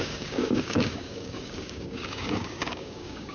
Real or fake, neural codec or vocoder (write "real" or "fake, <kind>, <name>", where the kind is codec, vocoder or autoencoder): fake, codec, DAC